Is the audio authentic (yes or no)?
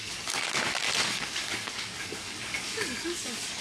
no